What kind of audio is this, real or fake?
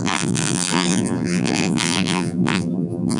fake